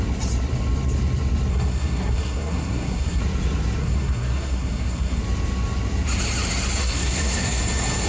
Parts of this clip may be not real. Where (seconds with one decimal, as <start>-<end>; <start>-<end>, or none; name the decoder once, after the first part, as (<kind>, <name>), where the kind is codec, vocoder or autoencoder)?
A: 1.5-3.2 (codec, SNAC); 3.8-5.2; 6.8-7.6